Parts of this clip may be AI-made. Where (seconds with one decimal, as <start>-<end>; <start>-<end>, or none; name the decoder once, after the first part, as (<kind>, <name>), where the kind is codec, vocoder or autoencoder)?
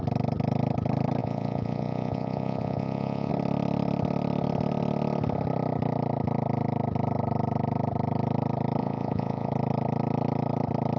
1.2-3.3 (vocoder, Vocos); 8.8-9.5